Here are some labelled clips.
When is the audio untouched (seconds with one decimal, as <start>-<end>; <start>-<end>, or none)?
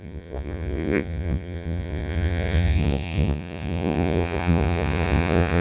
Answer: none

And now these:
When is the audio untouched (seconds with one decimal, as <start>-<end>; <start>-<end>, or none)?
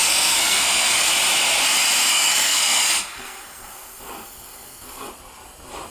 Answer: 1.1-2.1; 5.1-5.9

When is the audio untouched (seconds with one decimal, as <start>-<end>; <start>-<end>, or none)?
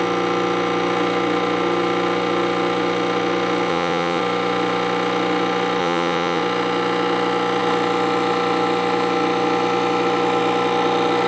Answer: 0.0-3.7; 4.2-5.8; 6.4-11.3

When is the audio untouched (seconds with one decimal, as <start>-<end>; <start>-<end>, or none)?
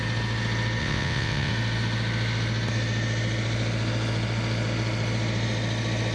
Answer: 0.0-0.8; 1.5-6.1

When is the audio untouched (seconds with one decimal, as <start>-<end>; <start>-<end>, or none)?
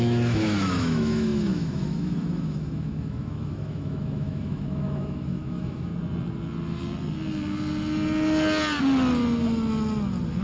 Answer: 5.9-10.4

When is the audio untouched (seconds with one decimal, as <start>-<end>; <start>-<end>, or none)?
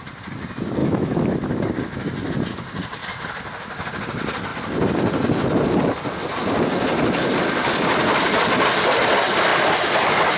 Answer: 0.0-0.8; 1.3-10.4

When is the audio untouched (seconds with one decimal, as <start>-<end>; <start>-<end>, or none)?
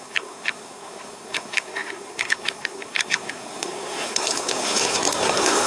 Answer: none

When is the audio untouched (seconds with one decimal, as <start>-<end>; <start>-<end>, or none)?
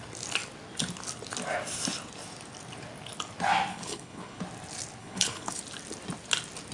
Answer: 0.0-3.7; 4.4-5.0; 5.6-6.7